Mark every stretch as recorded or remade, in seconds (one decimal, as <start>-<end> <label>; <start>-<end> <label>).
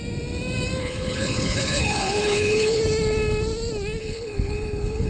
0.0-0.8 recorded; 0.8-2.8 remade; 2.8-4.0 recorded; 4.0-5.1 remade